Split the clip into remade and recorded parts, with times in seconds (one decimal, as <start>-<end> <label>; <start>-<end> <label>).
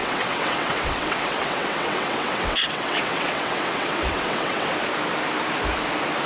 0.0-4.7 remade; 4.7-6.3 recorded